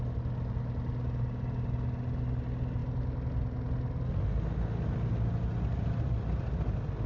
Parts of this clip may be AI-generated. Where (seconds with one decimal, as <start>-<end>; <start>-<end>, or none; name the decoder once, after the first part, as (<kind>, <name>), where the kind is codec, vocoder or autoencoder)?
none